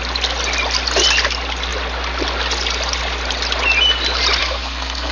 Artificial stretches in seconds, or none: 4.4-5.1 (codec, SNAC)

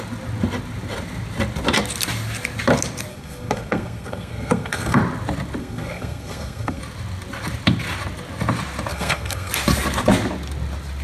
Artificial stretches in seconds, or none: 3.1-5.0 (codec, SNAC); 5.6-6.8; 8.9-9.5